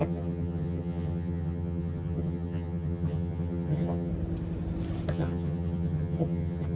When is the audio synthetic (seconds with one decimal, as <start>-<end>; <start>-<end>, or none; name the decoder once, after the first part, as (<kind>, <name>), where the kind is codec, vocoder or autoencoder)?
0.0-4.1 (vocoder, HiFi-GAN); 5.1-6.8